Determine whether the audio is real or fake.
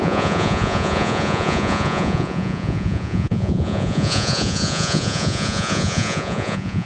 fake